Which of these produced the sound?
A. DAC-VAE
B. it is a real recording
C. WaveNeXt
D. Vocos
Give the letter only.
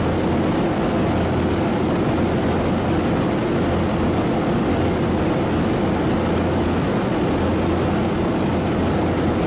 B